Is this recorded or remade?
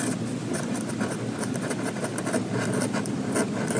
recorded